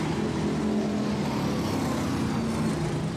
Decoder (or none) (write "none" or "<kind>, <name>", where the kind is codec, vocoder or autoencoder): none